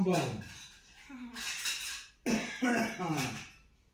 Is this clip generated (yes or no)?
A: no